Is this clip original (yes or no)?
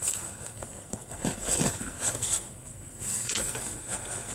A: no